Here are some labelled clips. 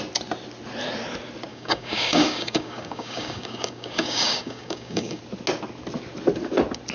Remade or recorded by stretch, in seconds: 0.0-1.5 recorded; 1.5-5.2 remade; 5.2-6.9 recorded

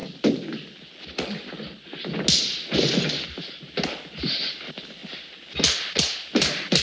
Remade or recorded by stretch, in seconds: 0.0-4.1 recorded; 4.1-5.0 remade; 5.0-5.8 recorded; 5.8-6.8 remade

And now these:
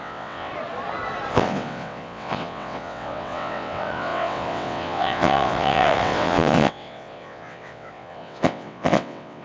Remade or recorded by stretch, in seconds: 0.0-0.5 remade; 0.5-1.3 recorded; 1.3-9.4 remade

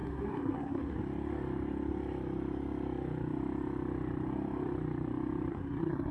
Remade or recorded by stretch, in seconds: 0.0-1.0 remade; 1.0-5.5 recorded; 5.5-6.1 remade